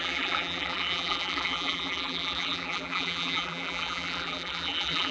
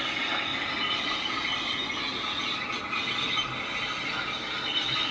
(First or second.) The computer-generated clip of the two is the first